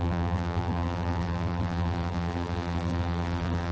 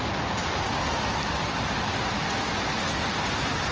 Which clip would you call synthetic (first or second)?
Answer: first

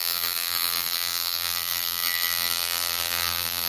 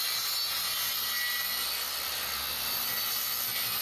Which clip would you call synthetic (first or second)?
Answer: first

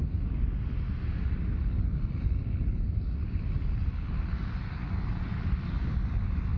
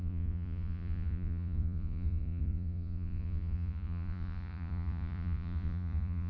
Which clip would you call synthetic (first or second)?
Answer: second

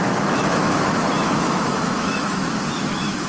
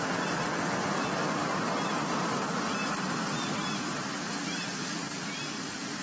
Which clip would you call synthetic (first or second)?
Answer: first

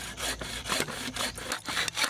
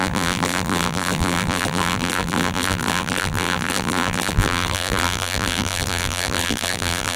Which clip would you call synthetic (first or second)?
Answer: second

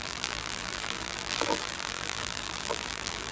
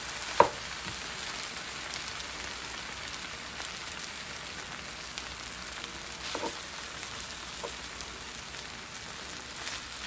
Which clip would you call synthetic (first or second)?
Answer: first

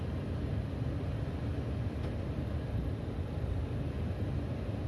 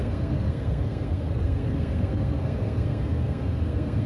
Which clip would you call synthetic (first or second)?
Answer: second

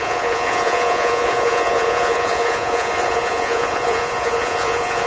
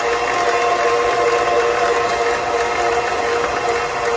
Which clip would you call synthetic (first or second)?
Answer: first